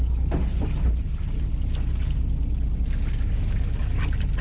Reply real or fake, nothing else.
real